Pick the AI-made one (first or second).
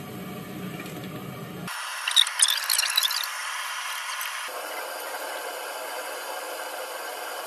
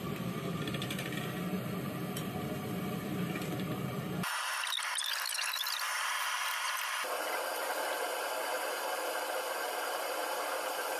second